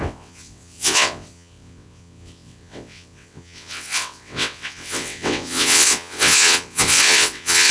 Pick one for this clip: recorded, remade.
remade